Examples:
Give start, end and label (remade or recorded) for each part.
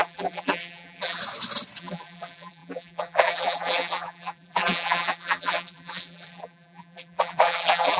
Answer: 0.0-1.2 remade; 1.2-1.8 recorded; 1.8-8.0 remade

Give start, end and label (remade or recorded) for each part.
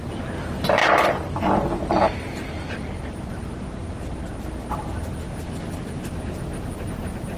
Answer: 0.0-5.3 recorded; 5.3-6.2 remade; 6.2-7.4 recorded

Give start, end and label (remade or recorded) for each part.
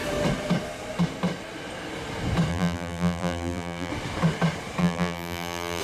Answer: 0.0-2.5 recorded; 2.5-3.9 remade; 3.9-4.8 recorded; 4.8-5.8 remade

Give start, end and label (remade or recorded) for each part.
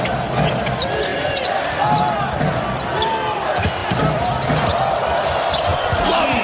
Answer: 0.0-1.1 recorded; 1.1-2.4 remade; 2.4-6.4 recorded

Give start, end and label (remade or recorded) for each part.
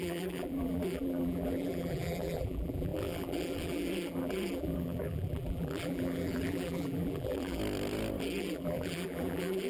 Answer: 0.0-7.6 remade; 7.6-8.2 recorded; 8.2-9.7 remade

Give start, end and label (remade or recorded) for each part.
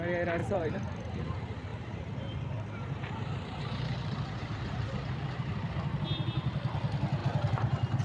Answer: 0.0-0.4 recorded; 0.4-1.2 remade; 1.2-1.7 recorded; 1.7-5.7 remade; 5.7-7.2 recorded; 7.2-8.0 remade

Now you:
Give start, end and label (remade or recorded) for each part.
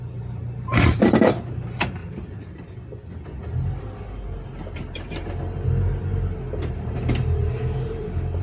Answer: 0.0-2.0 remade; 2.0-6.7 recorded; 6.7-8.4 remade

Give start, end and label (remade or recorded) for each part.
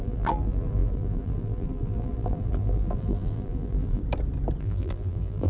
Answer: 0.0-4.0 remade; 4.0-4.6 recorded; 4.6-5.5 remade